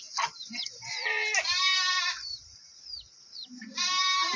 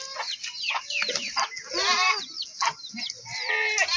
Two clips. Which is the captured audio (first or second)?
second